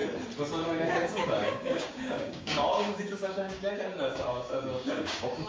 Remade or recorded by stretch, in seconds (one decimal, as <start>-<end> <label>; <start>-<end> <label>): 0.0-0.6 recorded; 0.6-5.5 remade